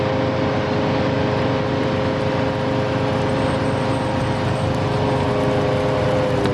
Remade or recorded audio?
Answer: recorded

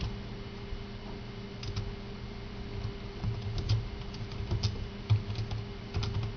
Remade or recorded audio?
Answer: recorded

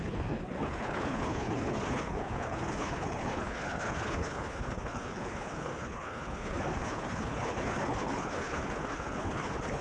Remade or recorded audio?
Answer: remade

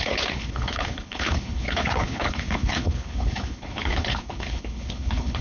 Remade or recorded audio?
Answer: remade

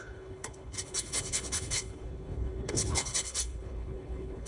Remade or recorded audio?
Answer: remade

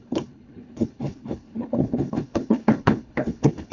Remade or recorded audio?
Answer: remade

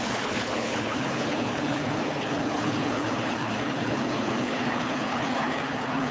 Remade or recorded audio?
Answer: remade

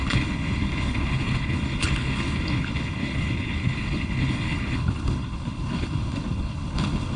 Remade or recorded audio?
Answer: remade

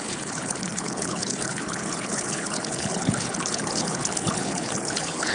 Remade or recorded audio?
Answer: remade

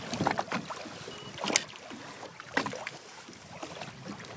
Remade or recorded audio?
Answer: recorded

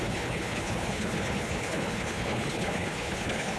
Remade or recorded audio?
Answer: remade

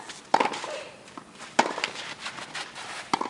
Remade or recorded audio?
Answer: recorded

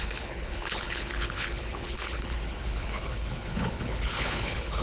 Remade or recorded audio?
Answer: remade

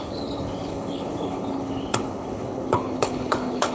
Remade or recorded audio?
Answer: remade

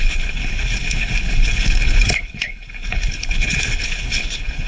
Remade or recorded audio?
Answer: remade